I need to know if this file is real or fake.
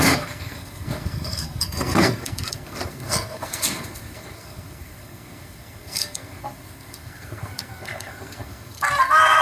fake